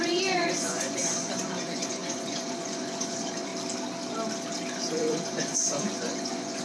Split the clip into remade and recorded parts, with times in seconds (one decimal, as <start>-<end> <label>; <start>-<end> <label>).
0.0-3.5 remade; 3.5-4.7 recorded; 4.7-6.6 remade